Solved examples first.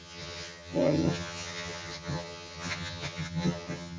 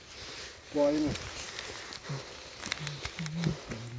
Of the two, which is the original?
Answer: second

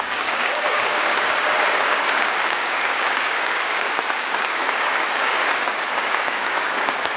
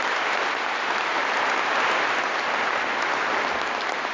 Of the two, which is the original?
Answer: second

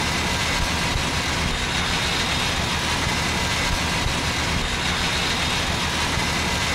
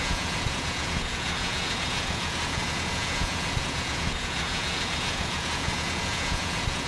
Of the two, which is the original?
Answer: first